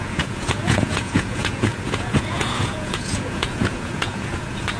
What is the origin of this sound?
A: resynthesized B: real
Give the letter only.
A